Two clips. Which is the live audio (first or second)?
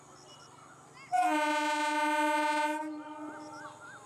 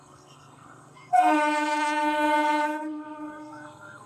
first